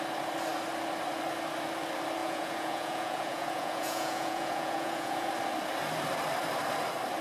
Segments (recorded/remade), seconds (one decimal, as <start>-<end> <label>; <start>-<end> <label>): 0.0-2.2 recorded; 2.2-5.3 remade; 5.3-7.2 recorded